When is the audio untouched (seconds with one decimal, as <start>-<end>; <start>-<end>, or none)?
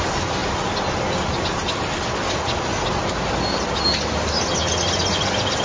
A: 0.0-5.6